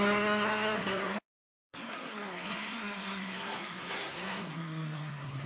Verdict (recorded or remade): remade